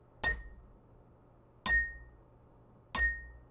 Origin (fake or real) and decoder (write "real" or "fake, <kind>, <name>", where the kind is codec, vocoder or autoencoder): real